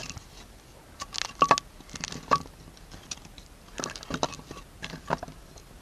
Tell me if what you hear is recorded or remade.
recorded